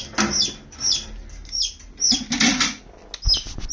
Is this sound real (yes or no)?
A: yes